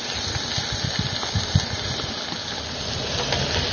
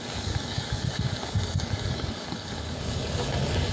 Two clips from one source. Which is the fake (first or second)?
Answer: second